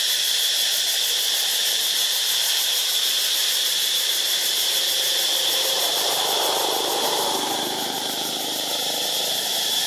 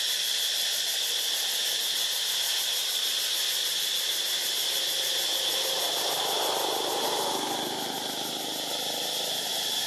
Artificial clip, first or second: first